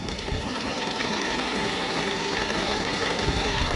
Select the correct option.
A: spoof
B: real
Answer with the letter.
A